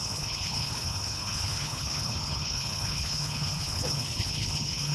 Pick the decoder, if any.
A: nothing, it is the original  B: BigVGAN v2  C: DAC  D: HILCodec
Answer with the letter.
D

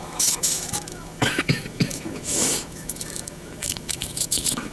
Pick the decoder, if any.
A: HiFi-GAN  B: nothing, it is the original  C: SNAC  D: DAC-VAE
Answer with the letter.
D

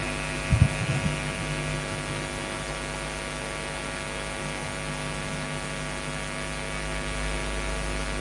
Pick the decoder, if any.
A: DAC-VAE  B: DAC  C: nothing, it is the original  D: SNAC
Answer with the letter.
C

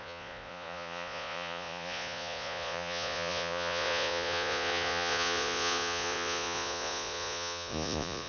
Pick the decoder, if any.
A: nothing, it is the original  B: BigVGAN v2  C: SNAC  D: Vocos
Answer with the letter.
D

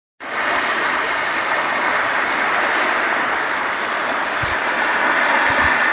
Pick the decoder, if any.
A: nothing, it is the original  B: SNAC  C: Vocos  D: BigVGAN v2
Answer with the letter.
A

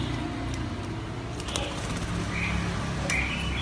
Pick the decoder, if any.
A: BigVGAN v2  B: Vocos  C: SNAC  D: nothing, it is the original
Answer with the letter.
D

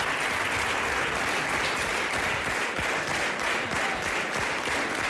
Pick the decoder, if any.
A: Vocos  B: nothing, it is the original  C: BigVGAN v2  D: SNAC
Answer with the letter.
B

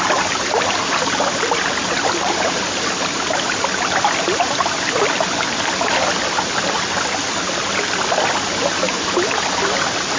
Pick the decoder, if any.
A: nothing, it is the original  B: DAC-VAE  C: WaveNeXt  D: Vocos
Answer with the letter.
A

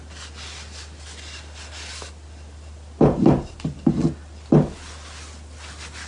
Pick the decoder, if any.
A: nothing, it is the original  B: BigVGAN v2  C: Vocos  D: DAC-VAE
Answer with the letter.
A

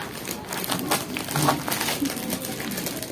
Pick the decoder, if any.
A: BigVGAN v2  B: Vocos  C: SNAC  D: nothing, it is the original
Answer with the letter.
D